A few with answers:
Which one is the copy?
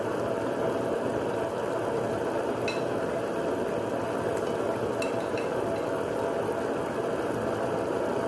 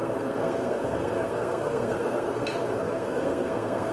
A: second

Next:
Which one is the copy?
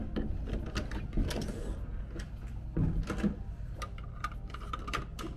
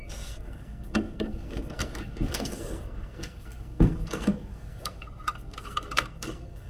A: second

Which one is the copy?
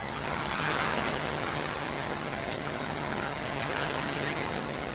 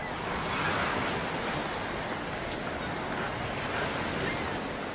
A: first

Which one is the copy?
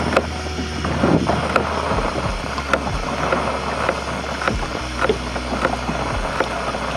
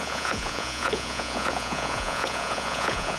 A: second